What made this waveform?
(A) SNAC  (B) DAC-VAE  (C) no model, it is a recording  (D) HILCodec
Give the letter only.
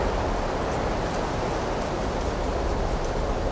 C